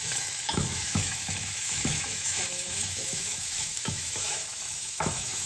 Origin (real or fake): fake